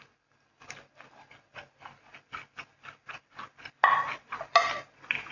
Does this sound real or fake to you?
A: real